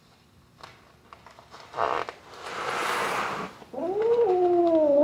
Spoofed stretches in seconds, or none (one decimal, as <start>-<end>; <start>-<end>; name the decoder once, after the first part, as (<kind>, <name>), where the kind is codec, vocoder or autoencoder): none